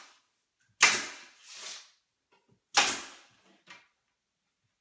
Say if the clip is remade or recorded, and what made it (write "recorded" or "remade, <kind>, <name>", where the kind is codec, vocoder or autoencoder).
recorded